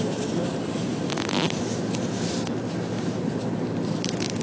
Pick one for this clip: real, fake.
real